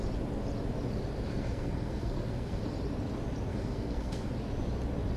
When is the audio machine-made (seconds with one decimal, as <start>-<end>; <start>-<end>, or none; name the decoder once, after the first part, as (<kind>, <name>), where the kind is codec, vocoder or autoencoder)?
1.3-2.6 (codec, SNAC); 3.5-4.3